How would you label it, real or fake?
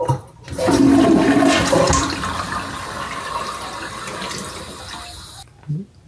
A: real